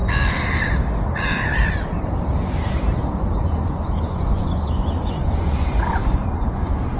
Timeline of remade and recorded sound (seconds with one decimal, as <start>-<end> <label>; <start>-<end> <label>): 0.0-3.4 recorded; 3.4-7.0 remade